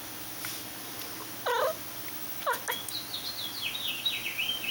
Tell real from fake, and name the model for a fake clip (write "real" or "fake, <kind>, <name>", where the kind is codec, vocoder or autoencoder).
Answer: real